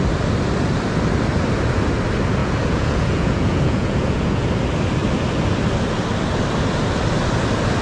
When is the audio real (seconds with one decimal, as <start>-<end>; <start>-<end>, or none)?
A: 0.0-2.4; 4.5-7.8